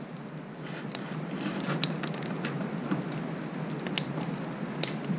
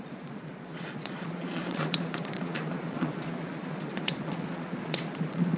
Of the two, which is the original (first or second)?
first